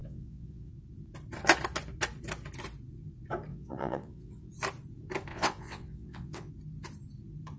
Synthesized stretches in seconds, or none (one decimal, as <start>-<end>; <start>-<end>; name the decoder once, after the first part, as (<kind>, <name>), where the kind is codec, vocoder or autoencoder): 0.0-0.7 (vocoder, WaveNeXt); 3.5-4.5; 5.3-6.5